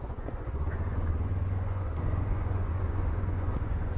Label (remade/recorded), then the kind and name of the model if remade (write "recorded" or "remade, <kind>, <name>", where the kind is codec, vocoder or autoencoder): remade, vocoder, Vocos